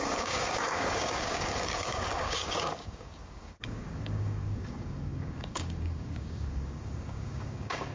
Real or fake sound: fake